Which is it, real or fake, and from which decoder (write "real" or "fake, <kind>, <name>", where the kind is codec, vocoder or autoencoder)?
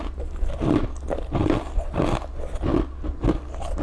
real